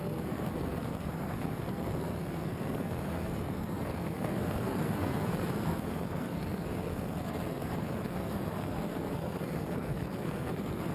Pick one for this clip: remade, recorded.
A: remade